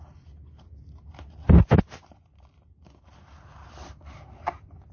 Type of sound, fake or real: real